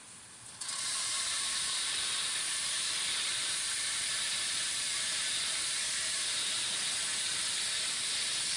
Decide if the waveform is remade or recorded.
remade